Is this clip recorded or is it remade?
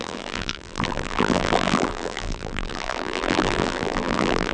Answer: remade